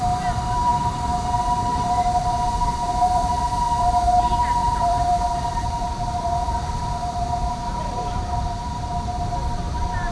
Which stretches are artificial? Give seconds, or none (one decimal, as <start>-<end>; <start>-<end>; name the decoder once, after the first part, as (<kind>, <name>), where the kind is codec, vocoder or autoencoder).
0.0-10.1 (vocoder, BigVGAN v2)